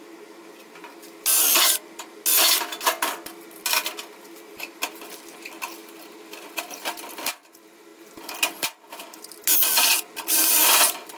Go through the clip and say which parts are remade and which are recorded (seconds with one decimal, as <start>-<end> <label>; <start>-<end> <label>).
0.0-5.8 recorded; 5.8-7.2 remade; 7.2-11.2 recorded